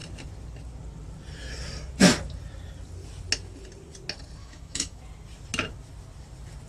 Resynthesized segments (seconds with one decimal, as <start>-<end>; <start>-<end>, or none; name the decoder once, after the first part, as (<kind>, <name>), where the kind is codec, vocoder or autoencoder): 4.4-5.0 (autoencoder, DAC-VAE)